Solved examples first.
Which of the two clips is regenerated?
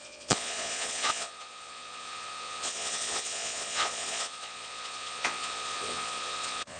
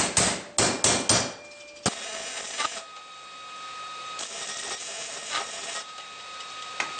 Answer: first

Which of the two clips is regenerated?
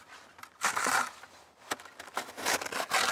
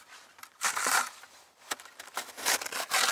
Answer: second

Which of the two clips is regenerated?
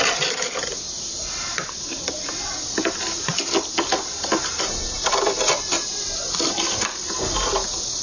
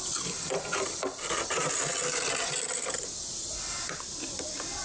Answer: first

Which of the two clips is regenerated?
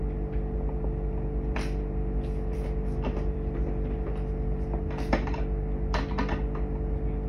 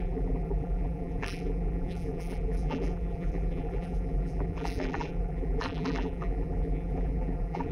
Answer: second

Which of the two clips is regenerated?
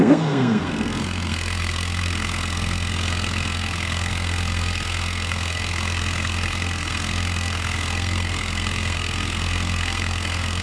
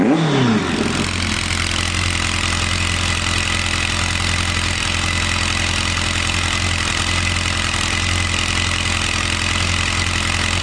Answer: first